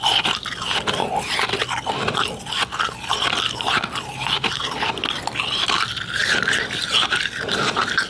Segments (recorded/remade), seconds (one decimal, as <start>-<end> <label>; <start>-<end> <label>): 0.0-8.1 recorded